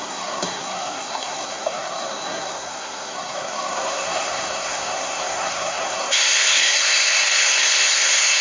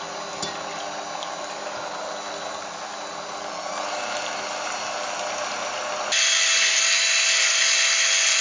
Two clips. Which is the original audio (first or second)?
second